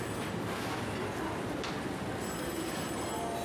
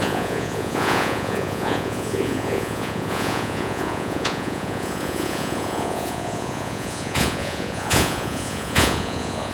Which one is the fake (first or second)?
second